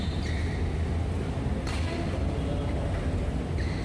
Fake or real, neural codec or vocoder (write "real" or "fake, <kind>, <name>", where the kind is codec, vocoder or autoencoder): real